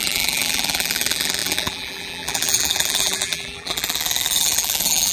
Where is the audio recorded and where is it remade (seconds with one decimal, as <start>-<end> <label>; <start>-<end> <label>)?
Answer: 0.0-5.1 remade